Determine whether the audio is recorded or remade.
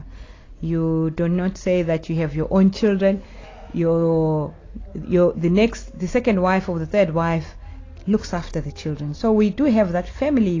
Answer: recorded